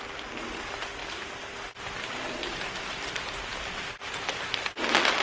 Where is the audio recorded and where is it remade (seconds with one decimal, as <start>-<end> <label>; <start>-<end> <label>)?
0.0-5.2 recorded